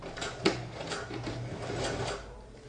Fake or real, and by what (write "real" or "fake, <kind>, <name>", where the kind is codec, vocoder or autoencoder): real